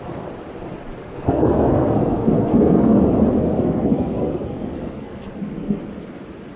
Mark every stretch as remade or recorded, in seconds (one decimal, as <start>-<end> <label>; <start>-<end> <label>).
0.0-1.0 recorded; 1.0-3.0 remade; 3.0-3.4 recorded; 3.4-5.8 remade; 5.8-6.6 recorded